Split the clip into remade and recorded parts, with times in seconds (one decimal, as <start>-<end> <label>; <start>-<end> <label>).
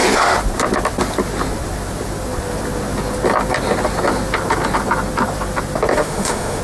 0.0-5.9 recorded; 5.9-6.6 remade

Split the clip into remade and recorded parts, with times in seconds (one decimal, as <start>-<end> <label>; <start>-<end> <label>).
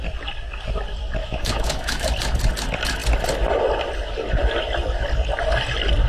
0.0-1.2 recorded; 1.2-2.1 remade; 2.1-6.1 recorded